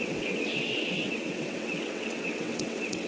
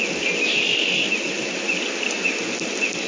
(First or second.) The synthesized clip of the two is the first